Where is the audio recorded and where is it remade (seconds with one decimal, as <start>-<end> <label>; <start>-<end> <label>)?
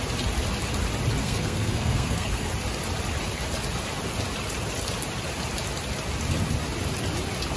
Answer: 0.0-1.2 recorded; 1.2-2.5 remade; 2.5-7.6 recorded